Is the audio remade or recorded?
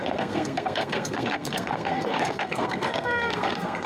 remade